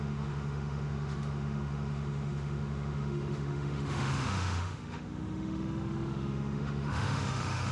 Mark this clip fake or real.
fake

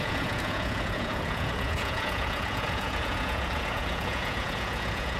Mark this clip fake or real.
fake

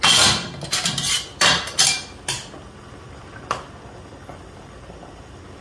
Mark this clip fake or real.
real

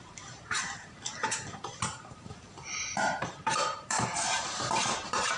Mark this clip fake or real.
fake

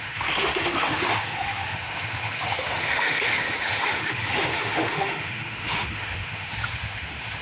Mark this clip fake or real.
fake